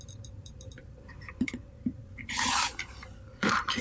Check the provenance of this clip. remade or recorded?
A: remade